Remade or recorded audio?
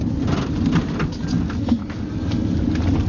recorded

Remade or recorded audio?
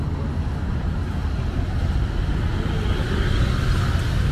recorded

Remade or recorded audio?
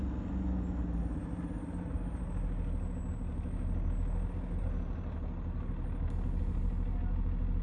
recorded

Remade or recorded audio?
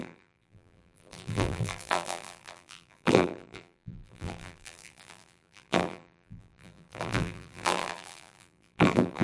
remade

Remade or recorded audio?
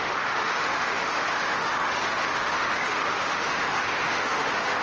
remade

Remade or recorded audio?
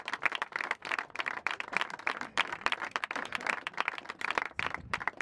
remade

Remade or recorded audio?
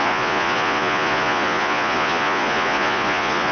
remade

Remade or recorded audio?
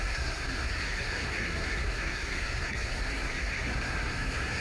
remade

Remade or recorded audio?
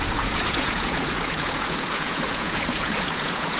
remade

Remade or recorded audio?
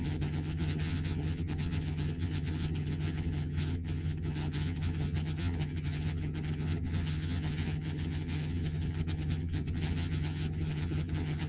remade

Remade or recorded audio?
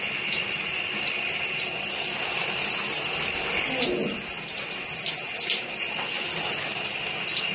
remade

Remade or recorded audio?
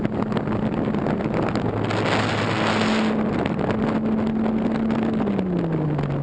recorded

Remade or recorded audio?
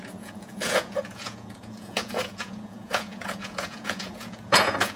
remade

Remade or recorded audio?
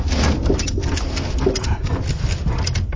recorded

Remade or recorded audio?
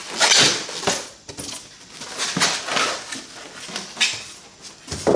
recorded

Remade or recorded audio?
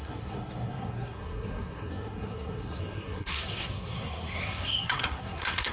remade